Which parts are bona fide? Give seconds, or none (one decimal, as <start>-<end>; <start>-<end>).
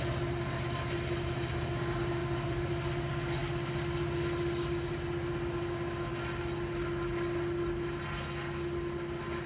0.0-2.2; 2.7-9.5